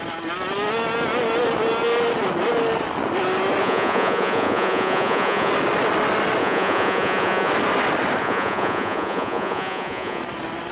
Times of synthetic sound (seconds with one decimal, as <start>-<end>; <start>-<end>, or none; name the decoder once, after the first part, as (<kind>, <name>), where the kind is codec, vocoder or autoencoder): 3.6-5.5 (vocoder, Vocos); 6.4-7.5; 8.2-10.2